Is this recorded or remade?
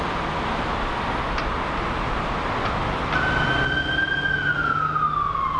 recorded